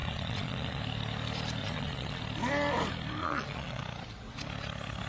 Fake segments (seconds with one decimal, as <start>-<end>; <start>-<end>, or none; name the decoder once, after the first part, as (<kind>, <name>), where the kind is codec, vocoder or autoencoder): 0.0-0.8 (vocoder, Vocos); 1.6-2.2; 3.2-3.8